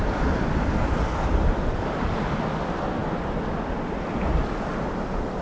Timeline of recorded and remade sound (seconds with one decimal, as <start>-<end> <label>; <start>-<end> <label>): 0.0-5.4 recorded